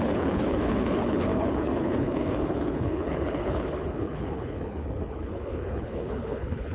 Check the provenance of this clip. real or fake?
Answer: fake